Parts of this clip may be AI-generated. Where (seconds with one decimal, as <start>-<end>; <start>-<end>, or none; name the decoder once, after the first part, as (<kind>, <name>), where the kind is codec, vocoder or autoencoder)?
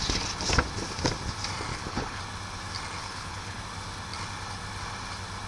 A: 1.7-2.2 (codec, HILCodec); 3.0-3.6